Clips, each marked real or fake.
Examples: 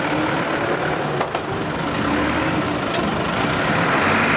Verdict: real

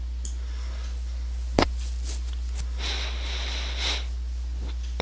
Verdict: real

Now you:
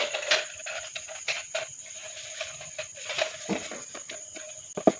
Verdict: real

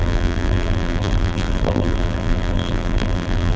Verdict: fake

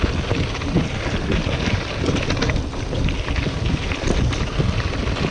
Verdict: real